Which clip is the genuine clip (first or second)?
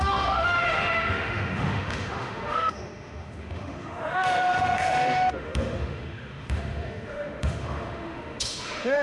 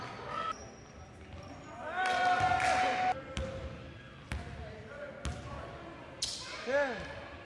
second